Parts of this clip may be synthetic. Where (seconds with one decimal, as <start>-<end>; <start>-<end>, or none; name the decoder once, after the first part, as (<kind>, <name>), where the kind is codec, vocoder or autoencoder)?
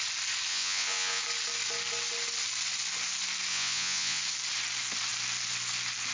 0.5-1.2 (vocoder, Vocos); 3.5-4.2